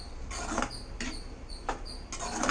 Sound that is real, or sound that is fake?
real